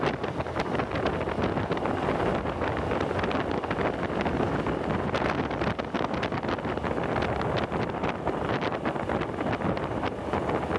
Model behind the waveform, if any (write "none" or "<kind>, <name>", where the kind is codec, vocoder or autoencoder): none